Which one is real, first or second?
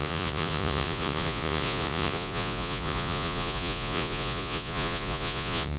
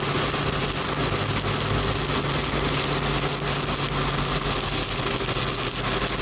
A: second